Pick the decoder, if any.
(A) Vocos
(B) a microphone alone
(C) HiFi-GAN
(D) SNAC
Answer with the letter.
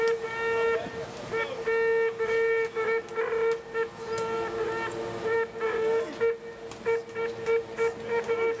B